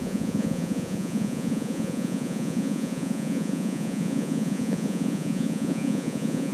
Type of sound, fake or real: fake